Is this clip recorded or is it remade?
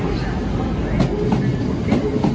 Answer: recorded